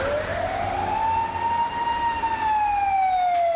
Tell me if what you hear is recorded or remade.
recorded